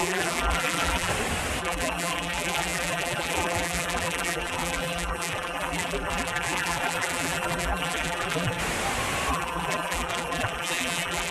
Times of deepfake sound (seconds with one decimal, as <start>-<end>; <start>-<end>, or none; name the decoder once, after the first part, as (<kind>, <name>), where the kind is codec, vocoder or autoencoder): 0.0-1.1 (vocoder, BigVGAN v2); 1.6-8.6; 9.3-11.3